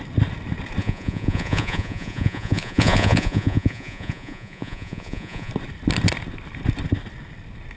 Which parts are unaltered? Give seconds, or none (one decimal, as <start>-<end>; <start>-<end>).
0.0-0.8; 5.5-7.8